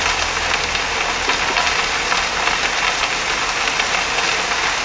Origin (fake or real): real